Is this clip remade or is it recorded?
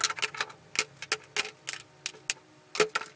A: recorded